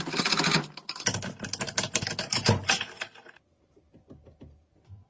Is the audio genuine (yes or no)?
yes